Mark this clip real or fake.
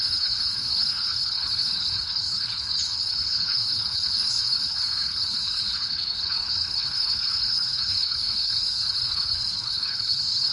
fake